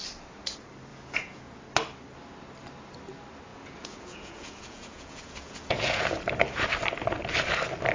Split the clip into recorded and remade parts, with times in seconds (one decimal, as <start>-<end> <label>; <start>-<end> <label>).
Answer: 0.0-0.9 recorded; 0.9-1.6 remade; 1.6-3.5 recorded; 3.5-6.2 remade; 6.2-7.9 recorded